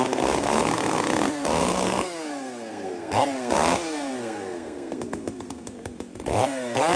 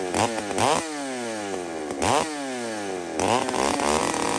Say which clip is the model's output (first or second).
first